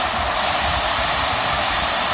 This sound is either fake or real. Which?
real